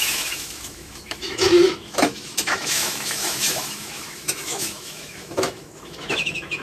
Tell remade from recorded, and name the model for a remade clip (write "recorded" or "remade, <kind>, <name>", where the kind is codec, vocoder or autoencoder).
remade, autoencoder, DAC-VAE